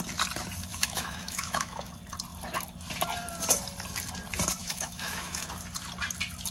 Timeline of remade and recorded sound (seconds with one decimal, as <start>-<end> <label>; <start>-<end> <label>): 0.0-0.7 recorded; 0.7-1.9 remade; 1.9-4.6 recorded; 4.6-5.5 remade; 5.5-6.5 recorded